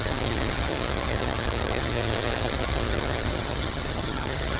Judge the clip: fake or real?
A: fake